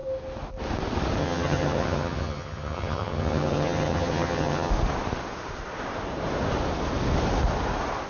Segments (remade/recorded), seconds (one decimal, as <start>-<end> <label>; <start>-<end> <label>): 0.0-1.2 recorded; 1.2-4.7 remade; 4.7-8.1 recorded